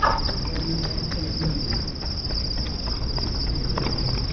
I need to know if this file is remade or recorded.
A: recorded